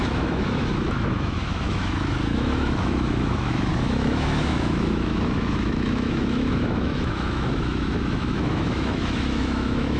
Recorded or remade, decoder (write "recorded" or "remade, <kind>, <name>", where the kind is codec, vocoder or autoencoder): remade, autoencoder, DAC-VAE